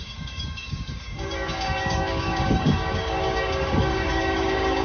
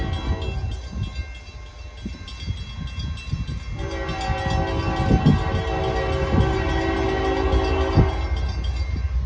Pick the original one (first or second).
second